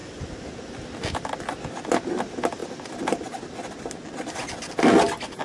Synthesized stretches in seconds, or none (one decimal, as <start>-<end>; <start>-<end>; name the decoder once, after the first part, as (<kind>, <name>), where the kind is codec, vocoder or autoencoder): none